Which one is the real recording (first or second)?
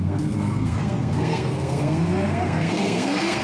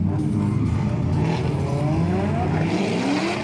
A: second